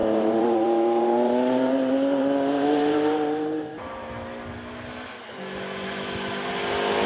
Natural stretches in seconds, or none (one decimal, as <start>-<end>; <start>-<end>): 4.1-7.1